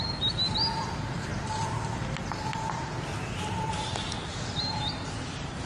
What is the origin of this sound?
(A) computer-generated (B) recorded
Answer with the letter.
B